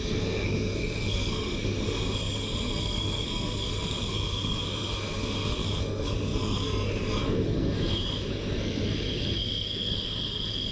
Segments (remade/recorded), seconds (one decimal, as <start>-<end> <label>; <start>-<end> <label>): 0.0-10.7 remade